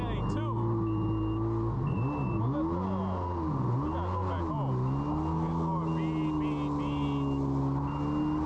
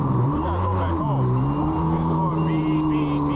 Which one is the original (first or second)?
first